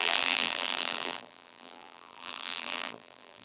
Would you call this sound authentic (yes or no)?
no